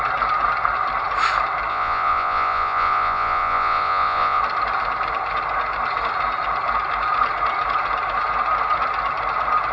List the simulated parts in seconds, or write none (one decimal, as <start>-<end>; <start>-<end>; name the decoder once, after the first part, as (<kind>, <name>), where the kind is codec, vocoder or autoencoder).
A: 1.7-4.4 (vocoder, Vocos)